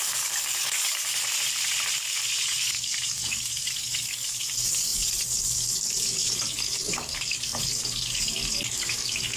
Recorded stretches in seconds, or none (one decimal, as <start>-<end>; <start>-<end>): 1.2-2.4